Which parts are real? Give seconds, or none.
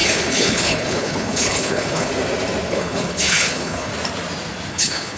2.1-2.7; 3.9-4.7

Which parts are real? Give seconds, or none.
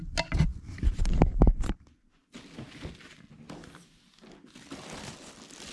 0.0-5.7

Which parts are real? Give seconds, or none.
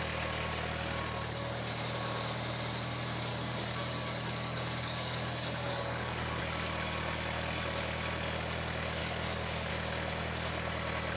0.0-3.3; 6.4-9.0; 9.7-11.2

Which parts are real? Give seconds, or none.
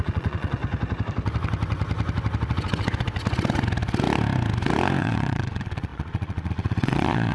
0.6-5.0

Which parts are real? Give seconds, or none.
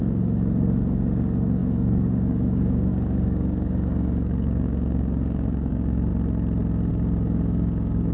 6.1-6.9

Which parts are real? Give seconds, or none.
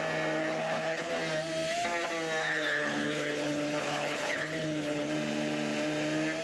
0.0-0.4; 1.1-2.4; 5.1-6.4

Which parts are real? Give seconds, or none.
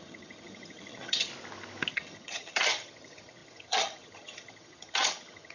1.3-1.9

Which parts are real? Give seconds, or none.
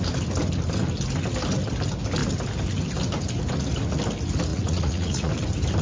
0.0-4.5; 5.3-5.8